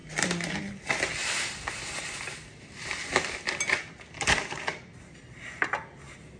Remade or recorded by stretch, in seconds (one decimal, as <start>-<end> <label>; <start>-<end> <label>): 0.0-6.4 recorded

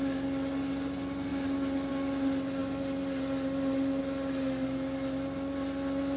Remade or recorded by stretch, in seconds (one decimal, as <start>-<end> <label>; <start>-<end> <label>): 0.0-6.2 recorded

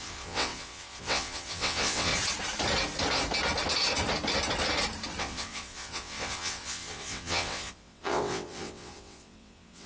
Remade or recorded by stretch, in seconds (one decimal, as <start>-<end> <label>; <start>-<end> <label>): 0.0-2.1 remade; 2.1-5.2 recorded; 5.2-9.9 remade

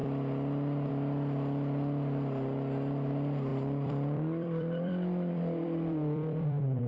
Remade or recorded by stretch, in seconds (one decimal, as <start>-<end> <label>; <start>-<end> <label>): 0.0-3.5 recorded; 3.5-6.9 remade

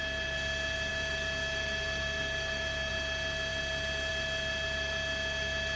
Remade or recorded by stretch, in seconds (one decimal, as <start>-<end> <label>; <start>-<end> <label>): 0.0-0.9 recorded; 0.9-2.9 remade; 2.9-5.8 recorded

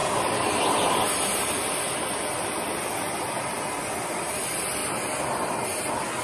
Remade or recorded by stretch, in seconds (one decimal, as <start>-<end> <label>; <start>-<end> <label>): 0.0-3.4 remade; 3.4-4.8 recorded; 4.8-5.6 remade; 5.6-6.2 recorded